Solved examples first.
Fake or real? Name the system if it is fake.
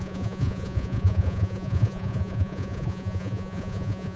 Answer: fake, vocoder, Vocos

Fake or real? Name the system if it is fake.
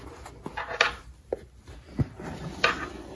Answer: real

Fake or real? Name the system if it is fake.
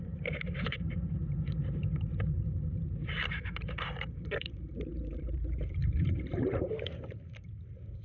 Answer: fake, vocoder, BigVGAN v2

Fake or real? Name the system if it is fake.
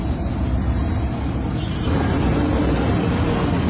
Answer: real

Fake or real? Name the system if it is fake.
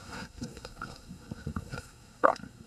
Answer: fake, codec, SNAC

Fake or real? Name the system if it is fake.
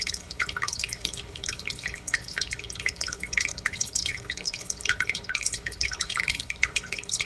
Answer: fake, codec, HILCodec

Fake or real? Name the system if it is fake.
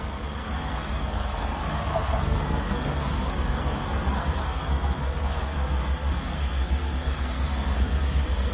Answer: fake, codec, SNAC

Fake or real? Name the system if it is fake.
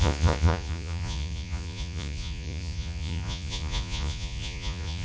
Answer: fake, vocoder, Vocos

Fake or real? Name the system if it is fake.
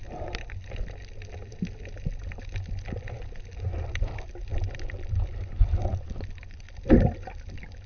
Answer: real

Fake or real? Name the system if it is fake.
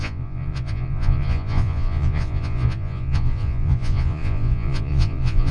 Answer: fake, vocoder, Vocos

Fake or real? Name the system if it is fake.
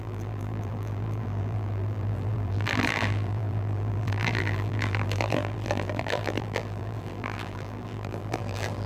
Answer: fake, vocoder, BigVGAN v2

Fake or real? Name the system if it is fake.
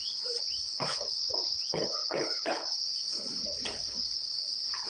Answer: fake, codec, HILCodec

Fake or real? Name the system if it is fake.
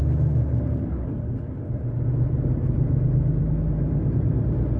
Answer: real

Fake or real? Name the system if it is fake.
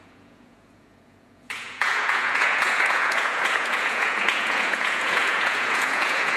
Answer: fake, vocoder, Vocos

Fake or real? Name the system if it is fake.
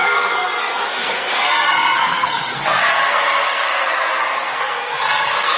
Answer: fake, codec, SNAC